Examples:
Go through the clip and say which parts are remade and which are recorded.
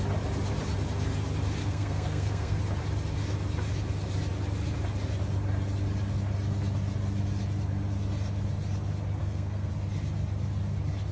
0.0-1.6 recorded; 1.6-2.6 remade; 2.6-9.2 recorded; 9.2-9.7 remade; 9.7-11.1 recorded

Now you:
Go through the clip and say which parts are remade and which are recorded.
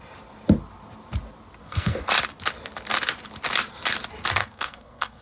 0.0-1.6 recorded; 1.6-2.1 remade; 2.1-4.4 recorded; 4.4-5.2 remade